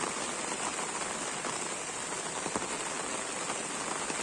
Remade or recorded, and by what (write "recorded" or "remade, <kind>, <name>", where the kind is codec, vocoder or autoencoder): recorded